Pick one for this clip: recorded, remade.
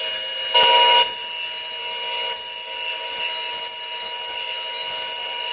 recorded